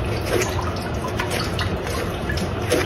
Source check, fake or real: real